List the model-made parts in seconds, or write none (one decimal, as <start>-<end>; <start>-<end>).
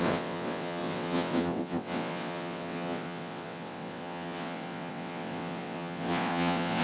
0.0-6.8